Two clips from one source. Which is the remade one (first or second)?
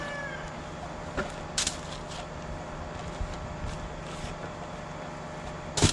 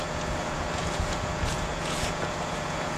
second